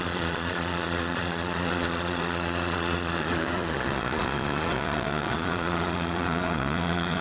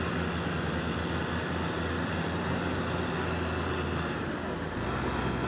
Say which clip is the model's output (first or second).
first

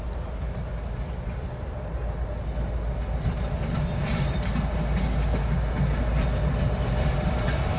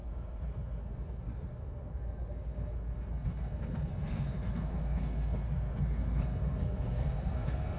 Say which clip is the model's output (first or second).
second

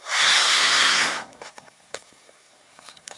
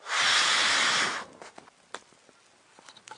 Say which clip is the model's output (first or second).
first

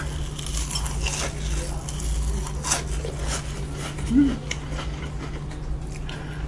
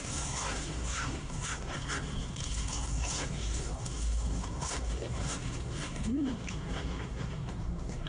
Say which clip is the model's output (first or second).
second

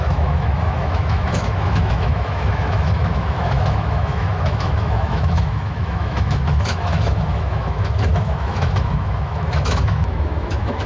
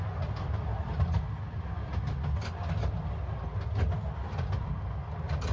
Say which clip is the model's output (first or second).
first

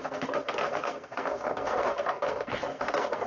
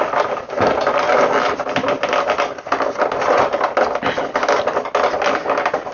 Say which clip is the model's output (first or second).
first